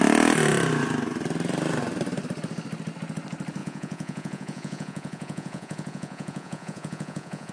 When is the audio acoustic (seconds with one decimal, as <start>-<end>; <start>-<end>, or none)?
0.0-3.6